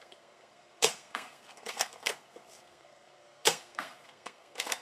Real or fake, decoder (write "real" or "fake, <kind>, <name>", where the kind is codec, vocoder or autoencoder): fake, codec, SNAC